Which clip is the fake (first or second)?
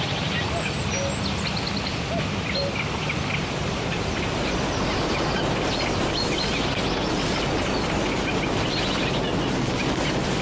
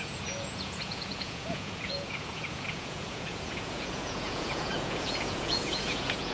second